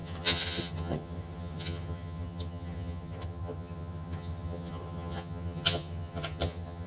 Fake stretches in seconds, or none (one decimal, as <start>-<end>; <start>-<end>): 0.0-6.9